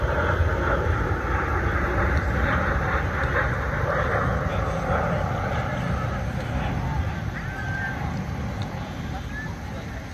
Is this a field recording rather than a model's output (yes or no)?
yes